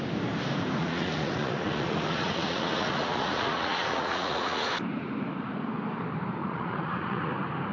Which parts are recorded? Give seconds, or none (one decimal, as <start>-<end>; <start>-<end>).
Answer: 0.0-0.8; 4.7-6.4; 7.3-7.7

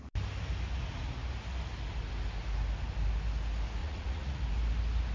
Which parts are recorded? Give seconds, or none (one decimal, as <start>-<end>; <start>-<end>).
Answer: 0.0-3.8; 4.4-5.1

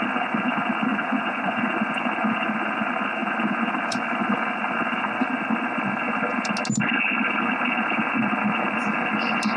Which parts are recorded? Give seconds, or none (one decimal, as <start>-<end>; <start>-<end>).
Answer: 0.0-0.9; 1.6-9.6

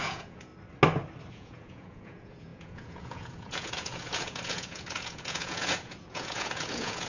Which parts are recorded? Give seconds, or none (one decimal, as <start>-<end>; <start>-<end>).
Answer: 0.5-1.3

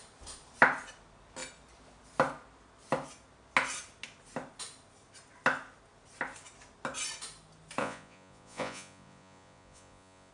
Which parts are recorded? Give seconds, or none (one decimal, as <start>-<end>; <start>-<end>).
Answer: 0.0-7.8

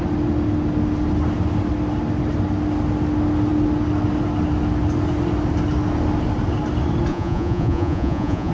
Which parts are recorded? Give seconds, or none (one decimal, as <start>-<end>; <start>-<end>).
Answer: 0.0-7.1

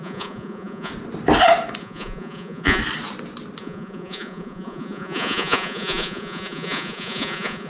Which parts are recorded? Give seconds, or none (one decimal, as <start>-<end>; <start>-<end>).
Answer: 0.9-1.8; 2.8-3.6

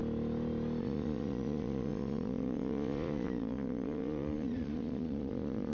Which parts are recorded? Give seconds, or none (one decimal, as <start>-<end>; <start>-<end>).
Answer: 0.0-0.8